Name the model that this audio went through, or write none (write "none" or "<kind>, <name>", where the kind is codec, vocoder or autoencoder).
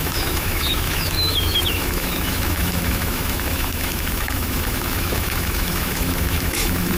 autoencoder, DAC-VAE